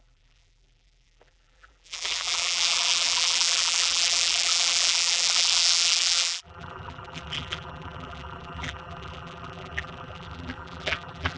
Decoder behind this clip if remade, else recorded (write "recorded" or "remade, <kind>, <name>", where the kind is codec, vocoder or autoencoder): remade, vocoder, BigVGAN v2